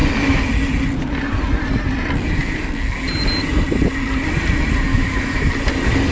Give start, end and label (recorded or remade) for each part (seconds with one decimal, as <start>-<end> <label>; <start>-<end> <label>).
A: 0.0-4.9 recorded; 4.9-5.5 remade; 5.5-6.1 recorded